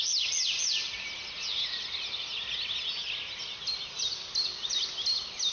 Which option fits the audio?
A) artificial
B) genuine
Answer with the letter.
B